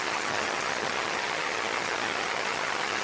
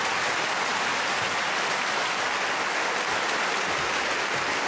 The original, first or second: second